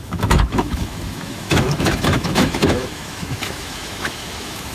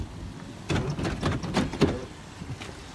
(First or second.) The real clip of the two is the second